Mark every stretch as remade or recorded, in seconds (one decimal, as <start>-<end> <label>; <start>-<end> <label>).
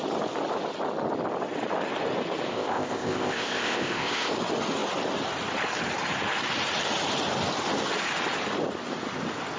0.0-2.5 recorded; 2.5-4.3 remade; 4.3-9.6 recorded